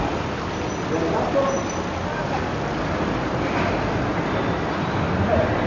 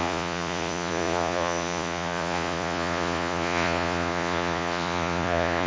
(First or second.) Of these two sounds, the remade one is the second